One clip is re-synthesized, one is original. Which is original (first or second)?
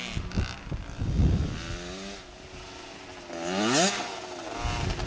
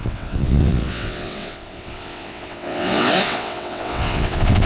first